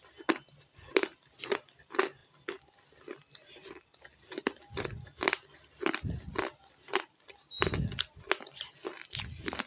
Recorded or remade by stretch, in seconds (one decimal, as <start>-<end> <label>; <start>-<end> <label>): 0.0-9.7 recorded